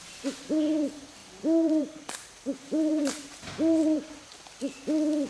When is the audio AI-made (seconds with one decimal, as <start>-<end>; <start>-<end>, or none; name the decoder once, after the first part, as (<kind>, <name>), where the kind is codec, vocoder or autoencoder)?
0.0-4.3 (vocoder, BigVGAN v2)

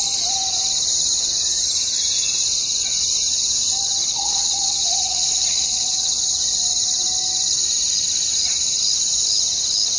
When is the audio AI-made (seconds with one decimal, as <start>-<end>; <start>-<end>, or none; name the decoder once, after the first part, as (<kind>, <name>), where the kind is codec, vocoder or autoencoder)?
4.1-6.2 (vocoder, WaveNeXt)